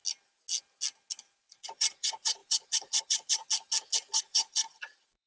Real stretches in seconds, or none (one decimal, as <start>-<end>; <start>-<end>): 0.0-1.5; 3.4-4.2